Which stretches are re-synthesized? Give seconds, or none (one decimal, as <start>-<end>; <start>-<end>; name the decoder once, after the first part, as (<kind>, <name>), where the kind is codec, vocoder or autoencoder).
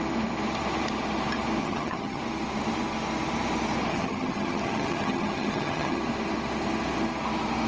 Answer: 1.6-2.2 (vocoder, HiFi-GAN); 3.9-6.0